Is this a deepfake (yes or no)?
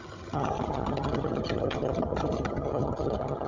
yes